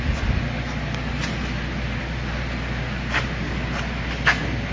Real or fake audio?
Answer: real